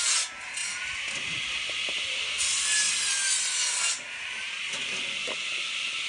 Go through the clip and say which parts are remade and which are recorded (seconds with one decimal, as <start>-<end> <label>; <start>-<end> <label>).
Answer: 0.0-6.1 recorded